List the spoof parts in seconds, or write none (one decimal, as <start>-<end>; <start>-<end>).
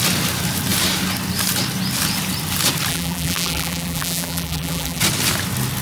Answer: 2.9-5.0